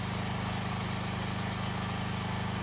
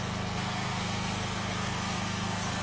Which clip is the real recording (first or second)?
first